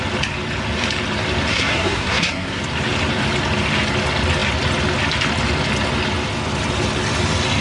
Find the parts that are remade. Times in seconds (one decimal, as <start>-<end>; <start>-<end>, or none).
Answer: 1.5-2.6